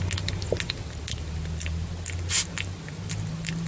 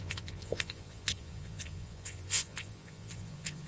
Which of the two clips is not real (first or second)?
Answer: second